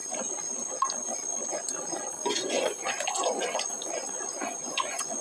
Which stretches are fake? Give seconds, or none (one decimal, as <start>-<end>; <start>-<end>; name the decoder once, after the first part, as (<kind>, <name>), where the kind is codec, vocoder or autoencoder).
2.5-5.2 (vocoder, Vocos)

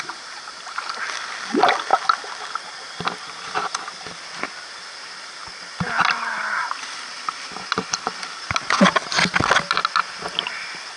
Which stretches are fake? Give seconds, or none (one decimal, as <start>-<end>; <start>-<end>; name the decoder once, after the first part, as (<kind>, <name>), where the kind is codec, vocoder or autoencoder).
1.9-4.4 (vocoder, BigVGAN v2)

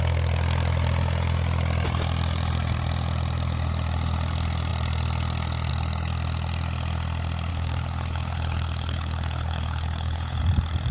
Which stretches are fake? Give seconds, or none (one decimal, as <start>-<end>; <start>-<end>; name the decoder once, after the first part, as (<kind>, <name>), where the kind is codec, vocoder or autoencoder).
7.5-10.4 (codec, HILCodec)

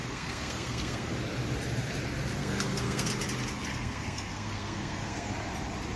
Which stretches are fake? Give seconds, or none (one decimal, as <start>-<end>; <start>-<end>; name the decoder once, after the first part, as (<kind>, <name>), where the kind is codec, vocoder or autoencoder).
0.0-1.1 (codec, SNAC); 2.4-3.1; 3.7-5.3

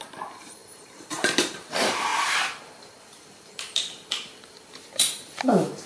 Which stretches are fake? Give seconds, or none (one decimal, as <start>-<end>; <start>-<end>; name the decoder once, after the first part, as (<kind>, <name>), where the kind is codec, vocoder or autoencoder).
0.0-5.9 (vocoder, BigVGAN v2)

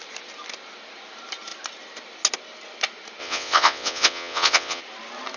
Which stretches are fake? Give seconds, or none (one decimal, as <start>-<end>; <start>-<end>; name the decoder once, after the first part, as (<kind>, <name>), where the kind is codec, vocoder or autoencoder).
3.2-4.8 (vocoder, WaveNeXt)